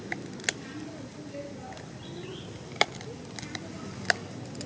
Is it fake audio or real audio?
real